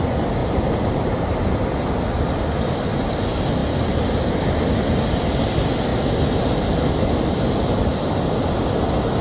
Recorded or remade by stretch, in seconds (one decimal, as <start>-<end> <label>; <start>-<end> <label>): 0.0-0.4 recorded; 0.4-1.4 remade; 1.4-9.2 recorded